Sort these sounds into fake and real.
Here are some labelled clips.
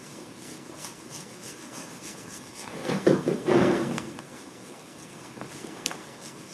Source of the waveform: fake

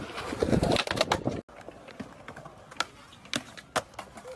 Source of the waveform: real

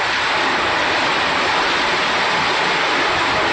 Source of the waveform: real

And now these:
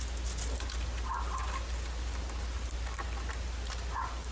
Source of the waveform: fake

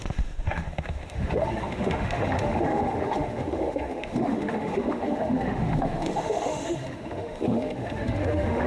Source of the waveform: fake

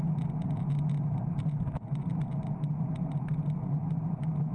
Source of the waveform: real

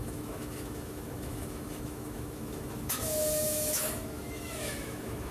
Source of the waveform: fake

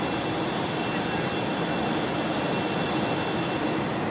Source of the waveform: real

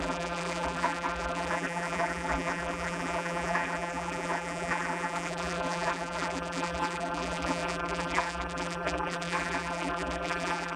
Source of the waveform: fake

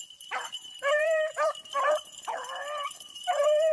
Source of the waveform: fake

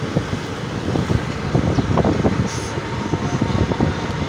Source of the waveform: real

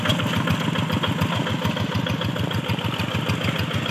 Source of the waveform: real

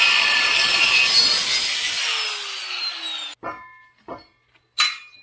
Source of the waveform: real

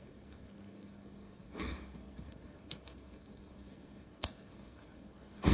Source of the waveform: fake